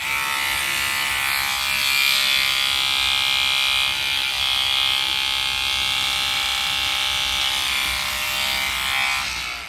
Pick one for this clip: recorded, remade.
recorded